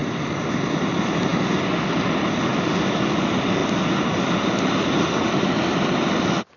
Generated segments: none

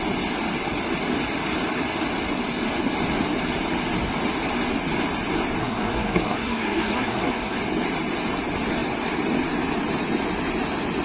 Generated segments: 5.6-7.6 (codec, SNAC)